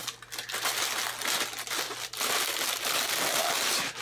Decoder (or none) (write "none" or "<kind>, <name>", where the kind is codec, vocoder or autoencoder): none